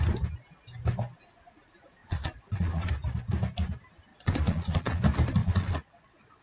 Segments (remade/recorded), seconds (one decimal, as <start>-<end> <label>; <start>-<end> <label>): 0.0-2.0 recorded; 2.0-2.9 remade; 2.9-4.1 recorded; 4.1-5.0 remade; 5.0-5.4 recorded; 5.4-6.4 remade